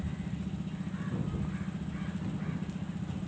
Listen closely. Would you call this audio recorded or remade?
recorded